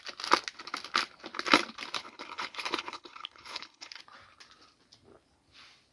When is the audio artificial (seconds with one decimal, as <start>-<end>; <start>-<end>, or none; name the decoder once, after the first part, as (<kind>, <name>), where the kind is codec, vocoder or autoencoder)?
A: 2.0-4.0 (codec, HILCodec)

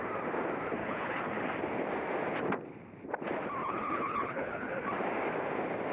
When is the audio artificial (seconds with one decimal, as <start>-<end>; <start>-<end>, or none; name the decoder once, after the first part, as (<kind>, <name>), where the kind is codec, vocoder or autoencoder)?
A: 0.8-1.4 (codec, HILCodec); 3.6-4.7

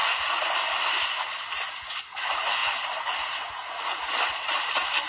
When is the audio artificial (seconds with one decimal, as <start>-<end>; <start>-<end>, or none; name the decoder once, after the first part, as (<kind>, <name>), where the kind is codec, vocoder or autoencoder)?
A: none

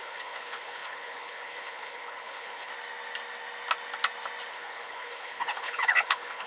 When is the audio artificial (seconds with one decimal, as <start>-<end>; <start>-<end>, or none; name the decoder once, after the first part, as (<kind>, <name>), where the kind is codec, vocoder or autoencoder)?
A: 0.0-2.7 (codec, HILCodec); 4.5-6.5

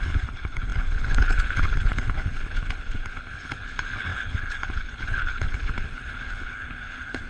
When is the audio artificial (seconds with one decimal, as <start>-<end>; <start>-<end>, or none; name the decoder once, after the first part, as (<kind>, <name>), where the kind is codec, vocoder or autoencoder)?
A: 0.0-7.3 (codec, HILCodec)

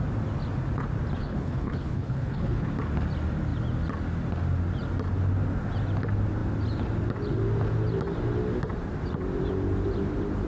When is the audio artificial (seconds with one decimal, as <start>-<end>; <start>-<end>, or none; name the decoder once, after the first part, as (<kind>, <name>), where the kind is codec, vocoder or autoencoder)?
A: 1.2-2.7 (codec, HILCodec)

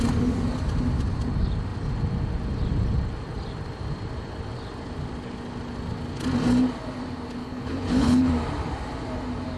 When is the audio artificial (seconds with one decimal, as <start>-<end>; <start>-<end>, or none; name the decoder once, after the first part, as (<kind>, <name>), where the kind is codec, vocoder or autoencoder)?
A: 7.4-8.3 (codec, HILCodec)